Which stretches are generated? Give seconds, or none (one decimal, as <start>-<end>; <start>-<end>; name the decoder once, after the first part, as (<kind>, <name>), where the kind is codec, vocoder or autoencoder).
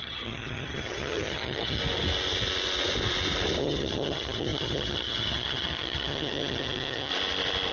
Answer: 0.0-1.8 (vocoder, HiFi-GAN); 3.6-7.1